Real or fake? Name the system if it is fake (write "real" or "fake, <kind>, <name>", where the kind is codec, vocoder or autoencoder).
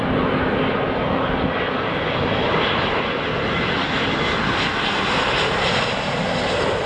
real